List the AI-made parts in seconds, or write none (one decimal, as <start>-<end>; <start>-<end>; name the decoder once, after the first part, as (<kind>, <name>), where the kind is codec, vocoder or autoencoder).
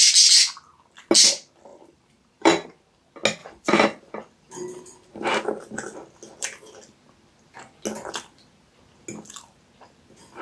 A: 1.7-2.8 (vocoder, BigVGAN v2); 3.4-4.1